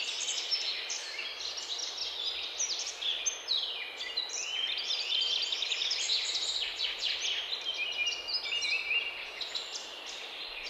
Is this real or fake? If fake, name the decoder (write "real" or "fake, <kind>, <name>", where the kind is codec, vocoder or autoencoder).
real